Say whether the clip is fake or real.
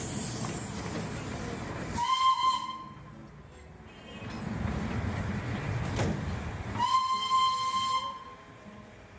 real